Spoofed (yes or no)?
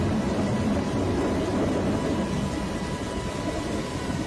no